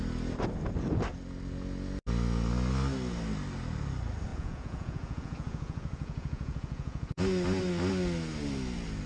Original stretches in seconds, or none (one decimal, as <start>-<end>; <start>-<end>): 0.0-4.3; 7.2-9.1